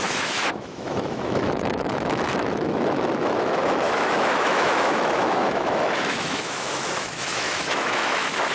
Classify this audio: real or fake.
fake